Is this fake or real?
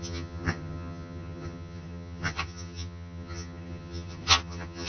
fake